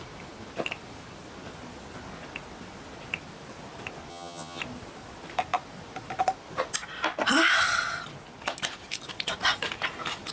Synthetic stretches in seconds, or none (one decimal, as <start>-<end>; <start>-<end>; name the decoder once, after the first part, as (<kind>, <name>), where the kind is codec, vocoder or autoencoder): 4.1-4.6 (vocoder, HiFi-GAN)